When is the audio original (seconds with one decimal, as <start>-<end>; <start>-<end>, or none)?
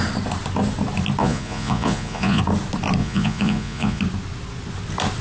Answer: 0.0-1.2; 2.4-3.0; 4.0-5.2